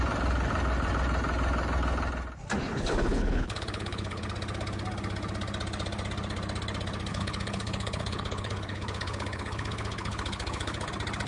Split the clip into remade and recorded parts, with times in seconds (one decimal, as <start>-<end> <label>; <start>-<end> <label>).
0.0-2.7 recorded; 2.7-4.2 remade; 4.2-7.1 recorded; 7.1-10.9 remade; 10.9-11.3 recorded